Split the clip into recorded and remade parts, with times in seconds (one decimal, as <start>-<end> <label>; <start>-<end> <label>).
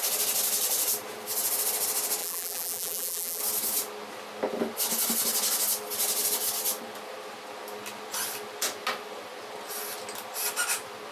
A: 0.0-2.2 recorded; 2.2-3.4 remade; 3.4-11.1 recorded